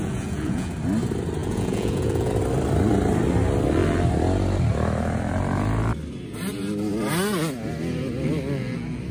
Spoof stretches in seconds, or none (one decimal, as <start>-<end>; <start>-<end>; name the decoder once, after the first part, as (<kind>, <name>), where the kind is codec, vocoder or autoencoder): 0.0-0.7 (vocoder, Vocos); 1.4-2.3